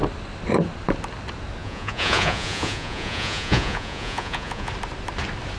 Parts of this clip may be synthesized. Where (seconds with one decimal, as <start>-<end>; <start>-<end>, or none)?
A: 1.6-4.7